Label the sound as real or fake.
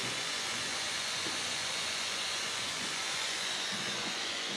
fake